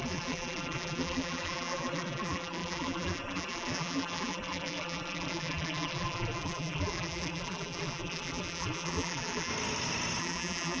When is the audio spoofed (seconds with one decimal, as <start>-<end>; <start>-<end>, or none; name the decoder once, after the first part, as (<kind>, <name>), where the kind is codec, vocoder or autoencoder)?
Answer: 0.0-9.5 (vocoder, BigVGAN v2); 10.2-10.8